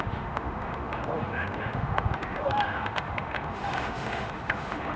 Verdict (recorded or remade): remade